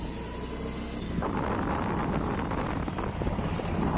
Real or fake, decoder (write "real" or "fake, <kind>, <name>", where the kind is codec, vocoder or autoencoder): real